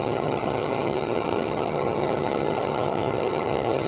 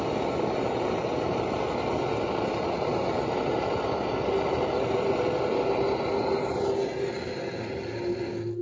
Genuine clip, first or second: second